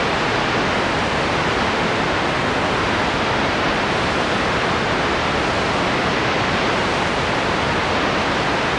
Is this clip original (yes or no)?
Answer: yes